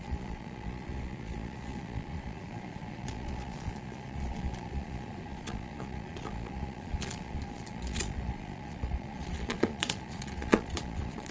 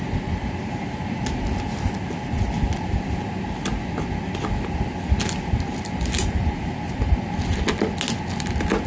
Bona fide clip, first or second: second